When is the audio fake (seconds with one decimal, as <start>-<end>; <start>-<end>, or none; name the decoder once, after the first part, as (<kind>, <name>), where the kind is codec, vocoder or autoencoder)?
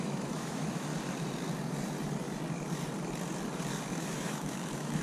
0.0-0.9 (autoencoder, DAC-VAE); 3.9-5.0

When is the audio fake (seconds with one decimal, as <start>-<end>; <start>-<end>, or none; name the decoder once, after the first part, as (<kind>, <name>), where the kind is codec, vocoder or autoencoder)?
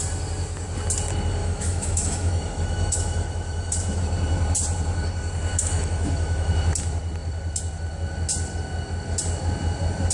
1.4-4.0 (autoencoder, DAC-VAE); 5.5-6.5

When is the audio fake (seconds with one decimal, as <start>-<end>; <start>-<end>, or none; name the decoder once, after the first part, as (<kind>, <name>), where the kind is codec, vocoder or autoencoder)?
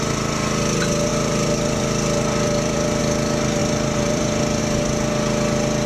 1.1-3.0 (vocoder, BigVGAN v2); 3.6-4.6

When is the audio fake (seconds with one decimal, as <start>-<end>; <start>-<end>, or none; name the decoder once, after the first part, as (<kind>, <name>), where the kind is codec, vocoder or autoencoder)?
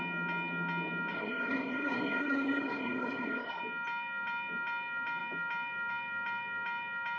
1.1-3.6 (codec, SNAC)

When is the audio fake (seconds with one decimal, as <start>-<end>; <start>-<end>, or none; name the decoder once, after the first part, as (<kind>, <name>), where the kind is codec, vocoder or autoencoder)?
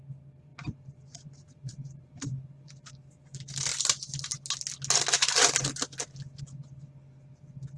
0.5-2.9 (vocoder, BigVGAN v2)